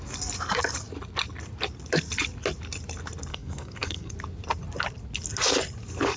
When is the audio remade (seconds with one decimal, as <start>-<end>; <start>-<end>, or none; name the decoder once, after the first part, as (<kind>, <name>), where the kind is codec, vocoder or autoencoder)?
3.3-4.1 (codec, SNAC)